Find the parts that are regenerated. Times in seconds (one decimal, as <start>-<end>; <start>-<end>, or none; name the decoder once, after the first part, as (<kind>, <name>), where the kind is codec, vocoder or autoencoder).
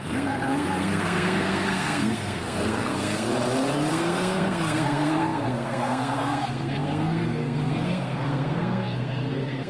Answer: 0.0-3.3 (codec, SNAC); 3.9-9.7